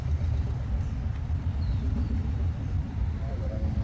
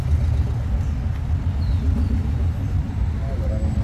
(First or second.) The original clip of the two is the second